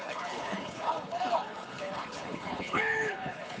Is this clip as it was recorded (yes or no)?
no